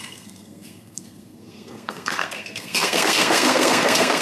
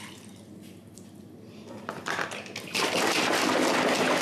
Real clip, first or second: second